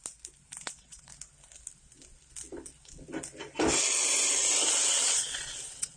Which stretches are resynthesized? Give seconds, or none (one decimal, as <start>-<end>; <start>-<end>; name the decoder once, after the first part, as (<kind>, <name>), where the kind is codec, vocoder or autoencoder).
0.6-1.1 (vocoder, WaveNeXt); 4.7-6.0